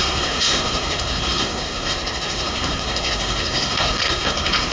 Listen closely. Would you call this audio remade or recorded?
remade